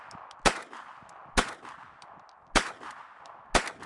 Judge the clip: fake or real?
real